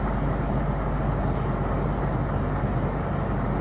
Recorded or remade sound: recorded